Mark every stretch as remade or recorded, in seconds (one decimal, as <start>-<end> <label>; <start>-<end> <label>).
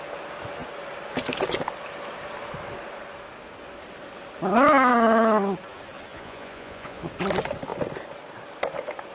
0.0-6.1 recorded; 6.1-7.1 remade; 7.1-9.1 recorded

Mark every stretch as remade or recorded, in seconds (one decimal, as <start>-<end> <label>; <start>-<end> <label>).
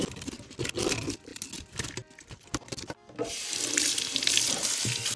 0.0-5.2 recorded